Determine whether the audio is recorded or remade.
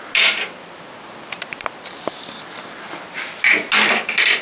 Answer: recorded